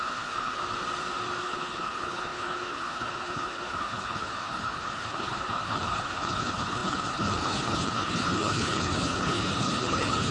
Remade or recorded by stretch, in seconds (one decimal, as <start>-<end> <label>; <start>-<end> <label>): 0.0-0.6 remade; 0.6-1.4 recorded; 1.4-10.3 remade